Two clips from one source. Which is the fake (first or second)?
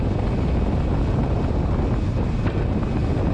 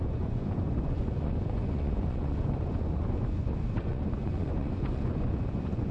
second